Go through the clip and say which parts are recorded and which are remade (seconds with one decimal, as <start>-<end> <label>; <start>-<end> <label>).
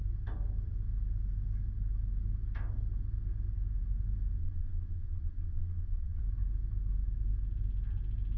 0.0-4.4 recorded; 4.4-6.2 remade; 6.2-8.4 recorded